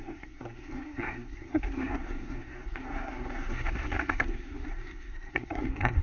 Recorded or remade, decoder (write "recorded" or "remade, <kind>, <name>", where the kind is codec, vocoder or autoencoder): remade, codec, SNAC